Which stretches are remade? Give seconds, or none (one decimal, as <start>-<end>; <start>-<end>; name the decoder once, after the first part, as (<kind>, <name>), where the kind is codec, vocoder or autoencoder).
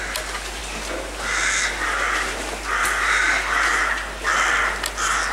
none